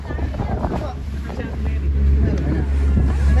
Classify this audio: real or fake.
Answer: real